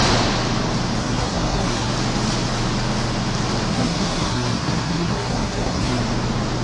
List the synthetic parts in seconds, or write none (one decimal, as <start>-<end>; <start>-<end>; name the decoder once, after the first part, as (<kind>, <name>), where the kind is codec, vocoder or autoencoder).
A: 1.0-1.9 (codec, SNAC); 3.7-6.0

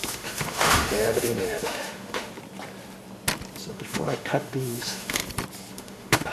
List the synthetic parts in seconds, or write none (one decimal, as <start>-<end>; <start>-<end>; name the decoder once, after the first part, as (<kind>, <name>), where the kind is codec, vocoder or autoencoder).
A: 0.0-2.3 (autoencoder, DAC-VAE); 3.7-5.2; 5.7-6.3

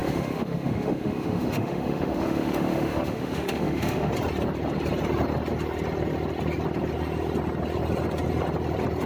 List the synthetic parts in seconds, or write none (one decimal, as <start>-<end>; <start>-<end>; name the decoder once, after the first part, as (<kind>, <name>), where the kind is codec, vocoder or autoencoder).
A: 0.0-4.1 (autoencoder, DAC-VAE)

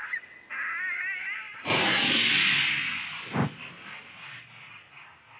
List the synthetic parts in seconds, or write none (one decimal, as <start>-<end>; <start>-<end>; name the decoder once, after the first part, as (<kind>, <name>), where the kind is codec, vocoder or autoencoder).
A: none

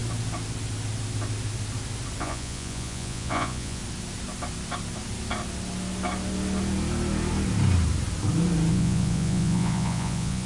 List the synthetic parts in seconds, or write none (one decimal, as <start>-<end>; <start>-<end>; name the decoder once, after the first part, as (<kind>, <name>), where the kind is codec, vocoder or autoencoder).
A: 2.2-3.8 (vocoder, Vocos); 8.7-10.5

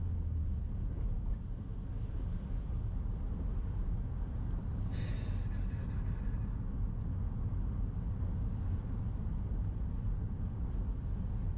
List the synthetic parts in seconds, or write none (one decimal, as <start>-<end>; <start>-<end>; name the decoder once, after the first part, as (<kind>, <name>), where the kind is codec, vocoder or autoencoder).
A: none

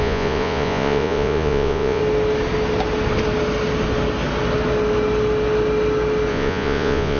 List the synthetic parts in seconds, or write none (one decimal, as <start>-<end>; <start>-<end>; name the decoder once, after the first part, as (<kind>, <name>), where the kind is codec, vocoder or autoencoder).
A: 0.0-2.0 (vocoder, Vocos); 6.3-7.2

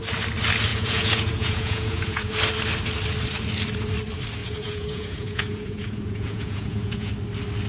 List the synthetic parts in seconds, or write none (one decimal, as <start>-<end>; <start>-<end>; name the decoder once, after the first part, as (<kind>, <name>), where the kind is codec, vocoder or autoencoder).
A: 0.7-2.3 (vocoder, Vocos); 4.4-7.1